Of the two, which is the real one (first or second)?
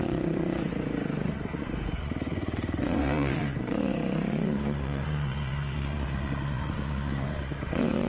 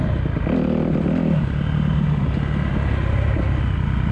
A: second